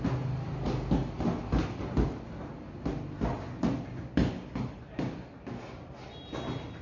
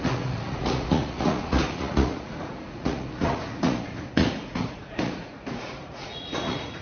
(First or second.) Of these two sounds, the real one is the first